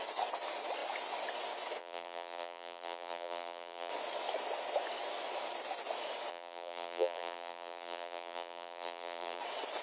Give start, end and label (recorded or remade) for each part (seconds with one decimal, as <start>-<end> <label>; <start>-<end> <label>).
0.0-1.8 recorded; 1.8-3.9 remade; 3.9-6.3 recorded; 6.3-9.4 remade; 9.4-9.8 recorded